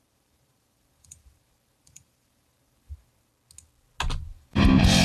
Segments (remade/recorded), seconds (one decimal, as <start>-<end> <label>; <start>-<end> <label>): 0.0-3.3 remade; 3.3-4.3 recorded; 4.3-5.0 remade